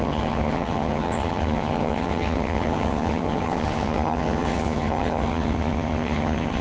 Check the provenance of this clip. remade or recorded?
remade